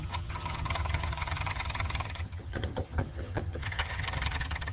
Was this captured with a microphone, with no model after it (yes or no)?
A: no